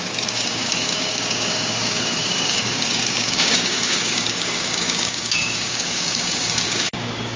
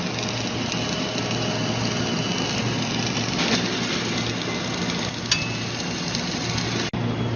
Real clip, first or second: second